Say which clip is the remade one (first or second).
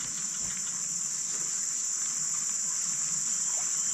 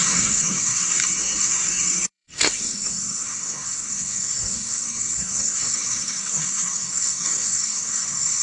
second